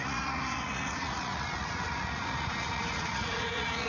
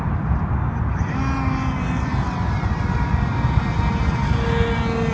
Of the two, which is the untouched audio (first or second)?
second